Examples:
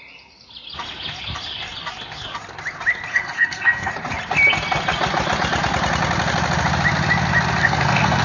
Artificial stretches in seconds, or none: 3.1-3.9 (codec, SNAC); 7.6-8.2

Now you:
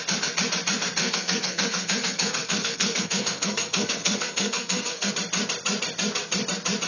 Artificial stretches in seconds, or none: 1.0-5.1 (codec, SNAC)

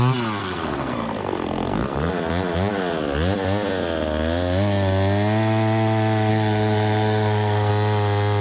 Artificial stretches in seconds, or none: 0.4-2.1 (codec, SNAC); 6.3-7.7

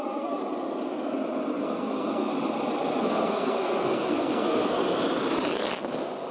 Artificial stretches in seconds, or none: 0.0-0.4 (codec, SNAC); 1.6-2.3; 3.0-4.8

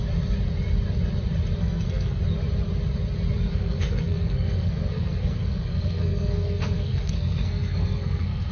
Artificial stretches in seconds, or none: 1.6-2.2 (codec, SNAC); 3.5-8.5

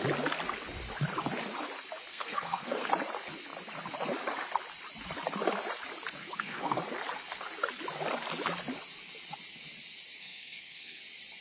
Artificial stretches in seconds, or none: 2.1-2.9 (codec, SNAC); 6.2-6.8; 10.2-11.0

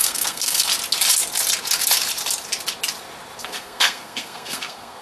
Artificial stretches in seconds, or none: 0.0-0.7 (codec, SNAC); 3.4-5.0